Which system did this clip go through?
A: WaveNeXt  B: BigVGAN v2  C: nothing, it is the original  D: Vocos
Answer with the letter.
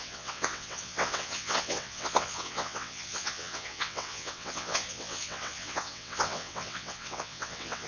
A